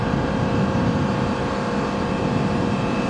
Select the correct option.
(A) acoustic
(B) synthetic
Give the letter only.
A